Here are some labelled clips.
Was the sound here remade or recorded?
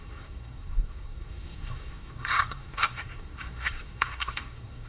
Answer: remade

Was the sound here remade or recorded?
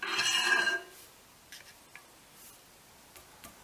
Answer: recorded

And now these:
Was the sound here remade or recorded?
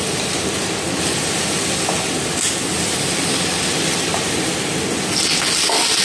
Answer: recorded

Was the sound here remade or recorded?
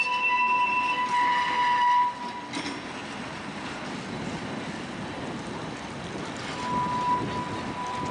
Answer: recorded